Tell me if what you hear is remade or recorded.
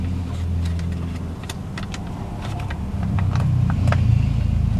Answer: recorded